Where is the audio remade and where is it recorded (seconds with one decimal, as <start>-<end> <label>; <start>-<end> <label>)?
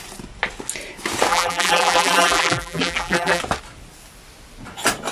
0.0-1.3 recorded; 1.3-3.4 remade; 3.4-5.1 recorded